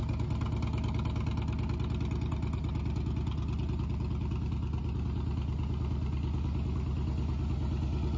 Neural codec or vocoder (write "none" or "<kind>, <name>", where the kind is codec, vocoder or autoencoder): none